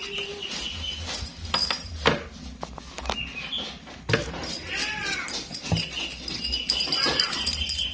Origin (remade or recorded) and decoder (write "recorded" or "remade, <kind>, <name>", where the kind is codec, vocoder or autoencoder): recorded